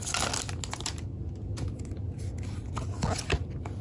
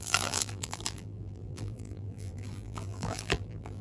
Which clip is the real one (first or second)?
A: first